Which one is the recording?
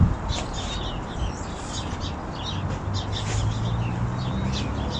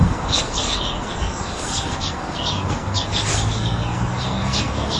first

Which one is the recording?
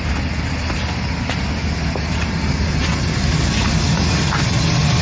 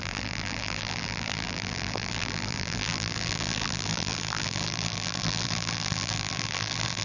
first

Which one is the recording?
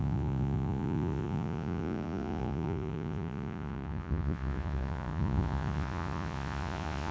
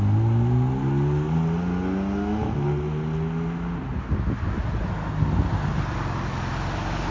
second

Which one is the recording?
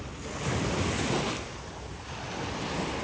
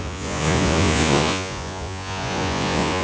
first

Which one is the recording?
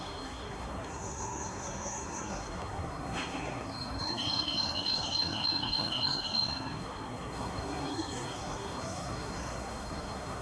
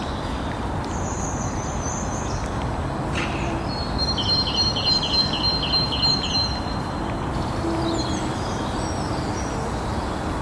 second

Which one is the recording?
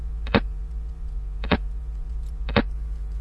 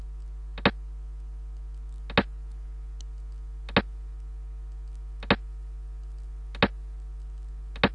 second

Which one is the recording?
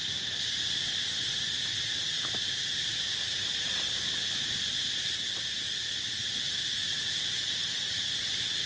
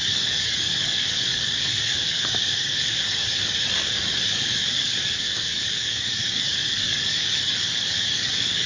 first